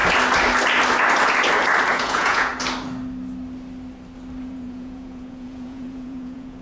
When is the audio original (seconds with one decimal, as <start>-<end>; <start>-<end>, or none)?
0.0-1.9; 2.5-4.4